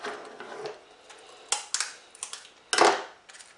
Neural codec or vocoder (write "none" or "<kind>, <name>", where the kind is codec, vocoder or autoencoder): none